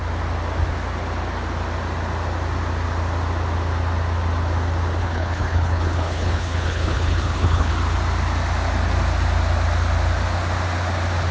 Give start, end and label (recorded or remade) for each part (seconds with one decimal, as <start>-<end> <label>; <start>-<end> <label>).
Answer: 0.0-5.0 recorded; 5.0-7.7 remade; 7.7-11.3 recorded